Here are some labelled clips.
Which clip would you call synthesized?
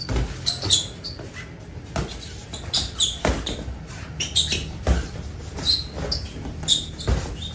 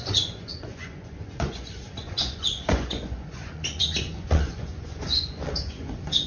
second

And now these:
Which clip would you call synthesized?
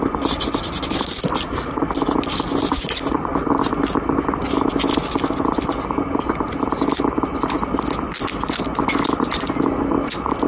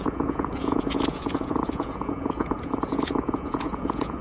second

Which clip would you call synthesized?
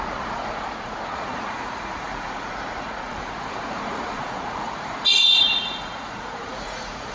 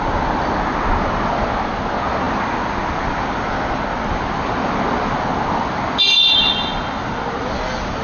first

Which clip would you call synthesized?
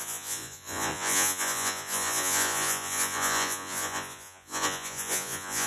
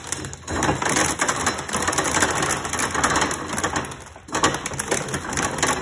first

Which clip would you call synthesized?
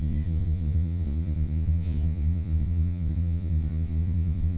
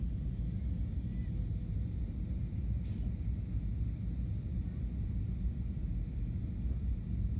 first